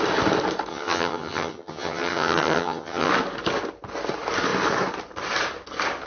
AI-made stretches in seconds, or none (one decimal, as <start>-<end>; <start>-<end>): 0.7-3.1

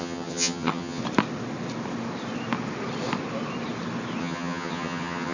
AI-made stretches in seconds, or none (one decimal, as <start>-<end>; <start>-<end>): 0.0-1.0; 4.2-5.3